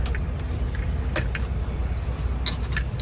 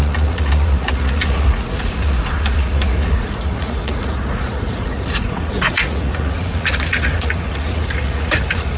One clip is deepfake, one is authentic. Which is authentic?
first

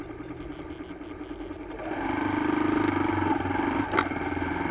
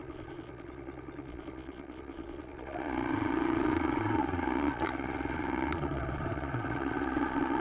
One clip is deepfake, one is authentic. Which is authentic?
first